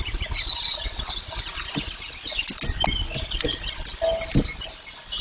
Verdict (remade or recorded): recorded